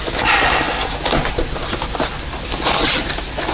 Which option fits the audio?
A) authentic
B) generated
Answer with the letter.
A